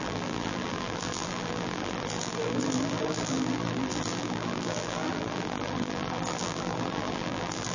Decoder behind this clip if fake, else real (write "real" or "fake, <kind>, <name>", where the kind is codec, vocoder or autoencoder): fake, vocoder, BigVGAN v2